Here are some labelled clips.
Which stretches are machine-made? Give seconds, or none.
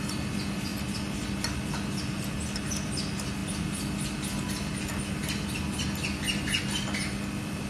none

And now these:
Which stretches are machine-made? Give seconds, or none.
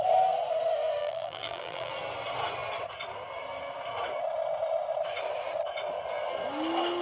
1.0-1.9 (vocoder, BigVGAN v2)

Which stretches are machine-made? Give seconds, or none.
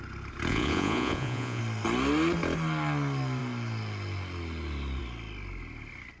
0.5-1.6 (vocoder, Vocos)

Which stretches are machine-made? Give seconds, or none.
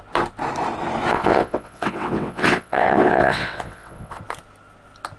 1.1-4.2 (vocoder, WaveNeXt)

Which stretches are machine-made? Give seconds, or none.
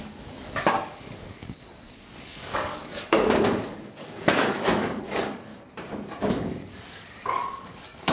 0.0-5.5 (codec, DAC); 6.2-8.1